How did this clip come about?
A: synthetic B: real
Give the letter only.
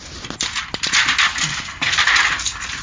B